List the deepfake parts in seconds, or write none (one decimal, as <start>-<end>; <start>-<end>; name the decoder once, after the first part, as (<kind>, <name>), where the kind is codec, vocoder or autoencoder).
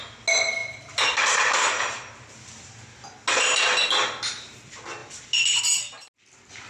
none